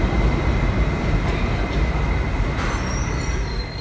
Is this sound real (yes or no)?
yes